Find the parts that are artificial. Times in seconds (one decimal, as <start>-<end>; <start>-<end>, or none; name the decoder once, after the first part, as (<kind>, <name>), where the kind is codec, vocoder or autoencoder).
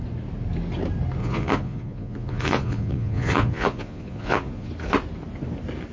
1.2-4.7 (vocoder, Vocos)